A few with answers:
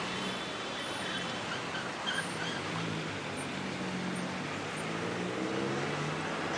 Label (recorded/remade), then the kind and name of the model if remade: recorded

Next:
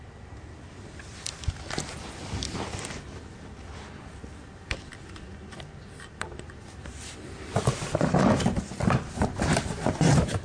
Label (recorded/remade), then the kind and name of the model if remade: recorded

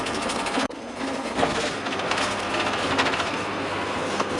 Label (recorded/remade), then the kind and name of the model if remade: remade, codec, SNAC